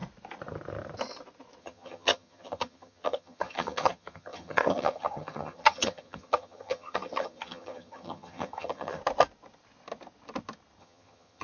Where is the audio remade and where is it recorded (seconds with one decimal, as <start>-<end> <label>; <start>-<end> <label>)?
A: 0.0-1.6 recorded; 1.6-9.0 remade; 9.0-10.8 recorded; 10.8-11.4 remade